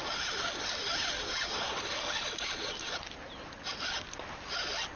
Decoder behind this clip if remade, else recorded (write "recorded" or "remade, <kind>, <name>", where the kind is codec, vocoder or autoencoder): recorded